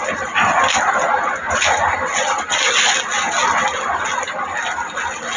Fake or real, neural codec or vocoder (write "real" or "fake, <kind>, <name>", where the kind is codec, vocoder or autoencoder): real